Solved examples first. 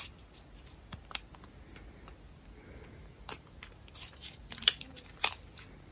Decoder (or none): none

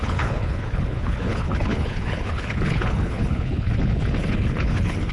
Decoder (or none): codec, HILCodec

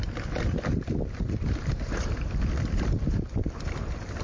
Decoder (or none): none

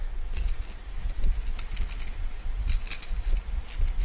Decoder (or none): none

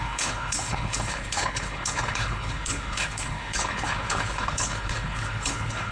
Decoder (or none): codec, HILCodec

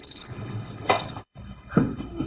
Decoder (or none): codec, HILCodec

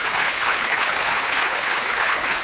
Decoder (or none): codec, HILCodec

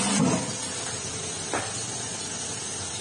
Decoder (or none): none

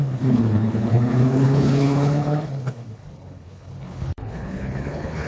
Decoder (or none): codec, HILCodec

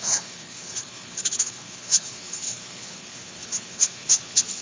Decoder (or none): codec, HILCodec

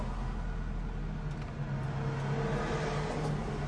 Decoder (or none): none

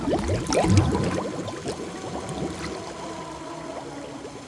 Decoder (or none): none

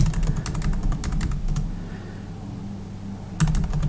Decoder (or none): none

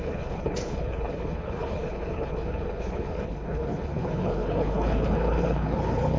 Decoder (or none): codec, HILCodec